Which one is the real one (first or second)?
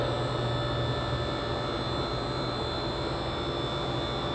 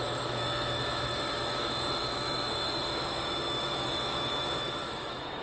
first